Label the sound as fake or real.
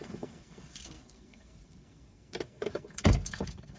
fake